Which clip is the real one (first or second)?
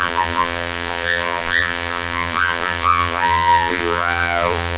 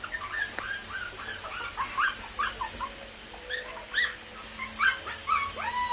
second